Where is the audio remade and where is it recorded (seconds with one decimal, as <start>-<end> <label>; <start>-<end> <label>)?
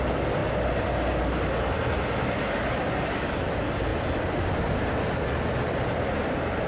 0.0-6.7 recorded